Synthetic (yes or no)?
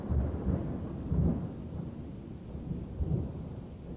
no